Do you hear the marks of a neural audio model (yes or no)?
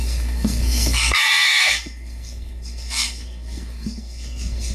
yes